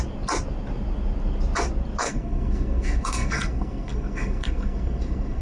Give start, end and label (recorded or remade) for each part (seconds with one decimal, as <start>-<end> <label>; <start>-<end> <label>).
0.0-2.0 recorded; 2.0-5.4 remade